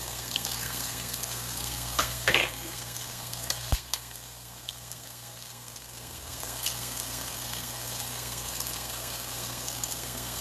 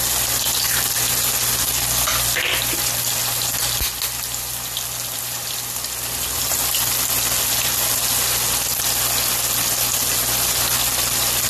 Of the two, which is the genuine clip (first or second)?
second